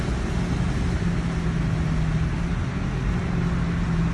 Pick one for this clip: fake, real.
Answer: real